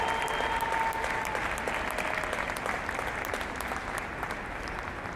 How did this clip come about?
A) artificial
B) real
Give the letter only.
B